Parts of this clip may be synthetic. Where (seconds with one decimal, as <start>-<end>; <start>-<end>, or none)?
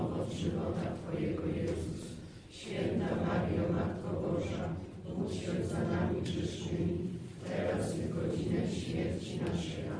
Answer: 0.0-10.0